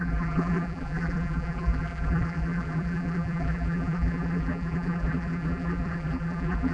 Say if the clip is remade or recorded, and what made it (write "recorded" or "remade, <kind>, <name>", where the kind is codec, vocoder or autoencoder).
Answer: remade, vocoder, BigVGAN v2